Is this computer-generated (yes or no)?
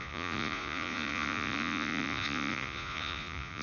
yes